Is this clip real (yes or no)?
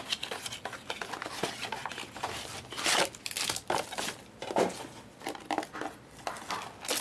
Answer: yes